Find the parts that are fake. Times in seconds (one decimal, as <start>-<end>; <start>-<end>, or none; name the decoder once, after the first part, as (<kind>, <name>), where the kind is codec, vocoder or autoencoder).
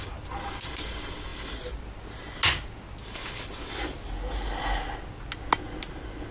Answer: none